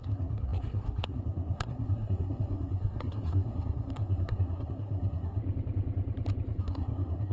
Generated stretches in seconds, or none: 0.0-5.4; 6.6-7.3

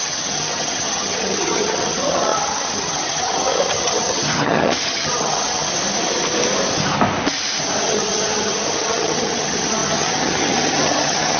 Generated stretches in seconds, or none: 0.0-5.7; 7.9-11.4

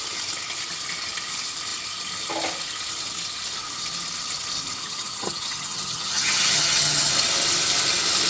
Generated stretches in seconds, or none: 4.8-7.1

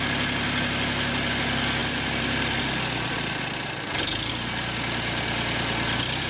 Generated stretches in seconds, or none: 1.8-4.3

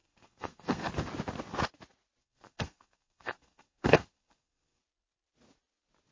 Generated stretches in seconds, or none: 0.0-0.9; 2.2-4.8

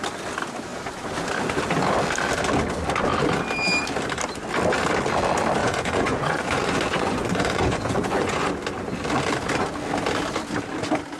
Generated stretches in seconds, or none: 5.6-8.5